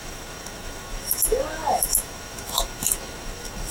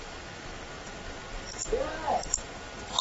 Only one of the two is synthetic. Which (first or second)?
first